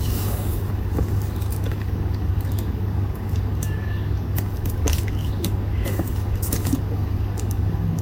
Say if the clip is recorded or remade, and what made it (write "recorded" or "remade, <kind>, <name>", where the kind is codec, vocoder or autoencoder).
remade, codec, DAC